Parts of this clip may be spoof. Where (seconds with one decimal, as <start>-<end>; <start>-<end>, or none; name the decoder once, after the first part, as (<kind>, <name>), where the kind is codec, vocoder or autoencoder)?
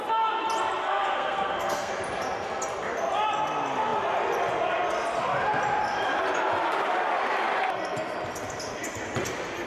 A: 0.8-1.9 (codec, SNAC)